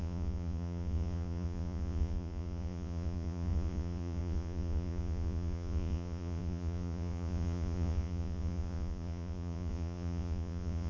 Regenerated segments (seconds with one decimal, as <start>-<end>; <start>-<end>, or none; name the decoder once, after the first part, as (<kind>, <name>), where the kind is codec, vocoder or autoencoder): 0.0-10.9 (vocoder, Vocos)